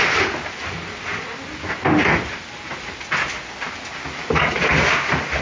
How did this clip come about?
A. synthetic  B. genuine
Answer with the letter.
B